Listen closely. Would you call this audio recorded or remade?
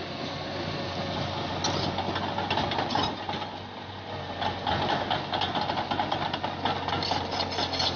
recorded